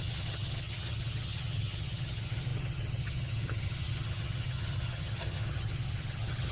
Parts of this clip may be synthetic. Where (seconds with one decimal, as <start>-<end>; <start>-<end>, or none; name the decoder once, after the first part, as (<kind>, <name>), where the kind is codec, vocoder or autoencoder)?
0.0-6.5 (vocoder, HiFi-GAN)